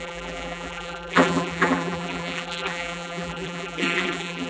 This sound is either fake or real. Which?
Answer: fake